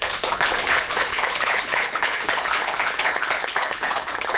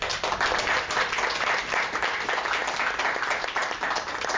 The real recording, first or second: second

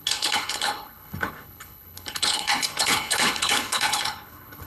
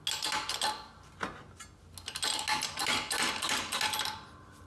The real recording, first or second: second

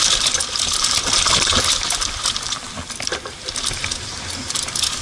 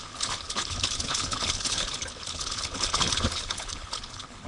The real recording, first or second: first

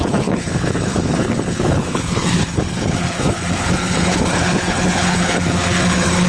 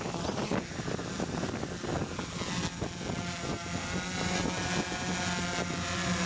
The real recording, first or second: second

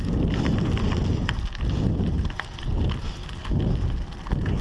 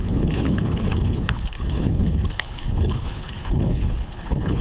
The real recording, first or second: first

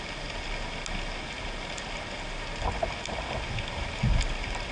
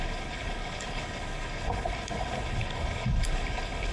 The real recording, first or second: first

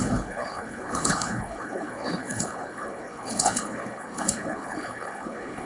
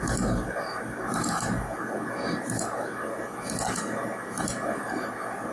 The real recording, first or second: second